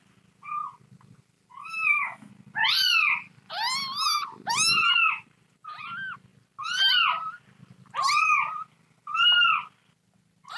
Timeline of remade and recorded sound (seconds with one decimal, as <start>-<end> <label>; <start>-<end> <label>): 0.0-1.6 recorded; 1.6-2.3 remade; 2.3-10.6 recorded

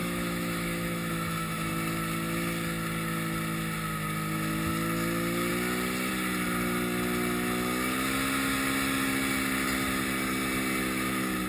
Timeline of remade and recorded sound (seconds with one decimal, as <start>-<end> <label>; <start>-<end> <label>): 0.0-1.7 remade; 1.7-11.5 recorded

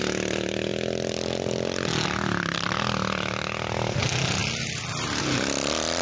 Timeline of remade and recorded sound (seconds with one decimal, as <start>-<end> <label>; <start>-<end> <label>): 0.0-6.0 recorded

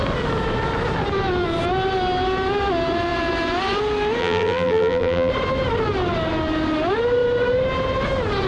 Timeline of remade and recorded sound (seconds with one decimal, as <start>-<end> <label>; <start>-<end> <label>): 0.0-4.2 recorded; 4.2-5.3 remade; 5.3-8.5 recorded

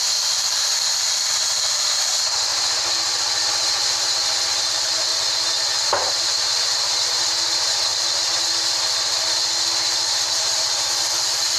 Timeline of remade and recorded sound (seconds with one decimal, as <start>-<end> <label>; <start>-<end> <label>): 0.0-2.5 remade; 2.5-4.6 recorded; 4.6-5.1 remade; 5.1-10.3 recorded; 10.3-11.6 remade

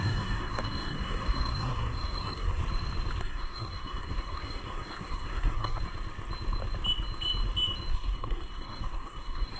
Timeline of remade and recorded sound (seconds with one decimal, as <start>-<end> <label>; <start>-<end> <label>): 0.0-2.6 remade; 2.6-3.2 recorded; 3.2-5.8 remade; 5.8-7.9 recorded; 7.9-9.6 remade

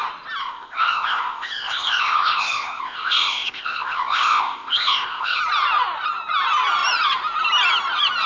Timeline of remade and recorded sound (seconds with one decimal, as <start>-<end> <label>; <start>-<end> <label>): 0.0-0.4 recorded; 0.4-5.4 remade; 5.4-8.3 recorded

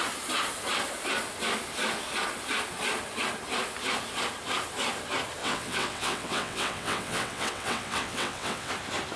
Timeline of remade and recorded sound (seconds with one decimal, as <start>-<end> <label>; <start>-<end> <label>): 0.0-5.4 recorded; 5.4-8.7 remade; 8.7-9.2 recorded